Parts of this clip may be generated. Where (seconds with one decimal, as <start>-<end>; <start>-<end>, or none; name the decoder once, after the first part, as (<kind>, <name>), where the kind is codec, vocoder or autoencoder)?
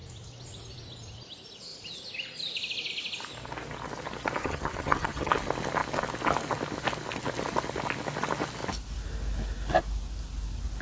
4.4-5.3 (vocoder, HiFi-GAN)